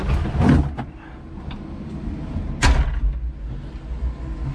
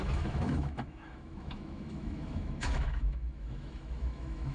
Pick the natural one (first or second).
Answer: first